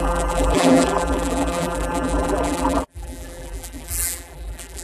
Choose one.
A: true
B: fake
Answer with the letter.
B